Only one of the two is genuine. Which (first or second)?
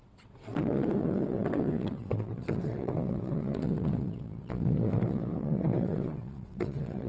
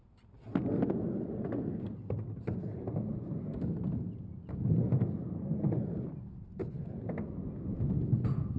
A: second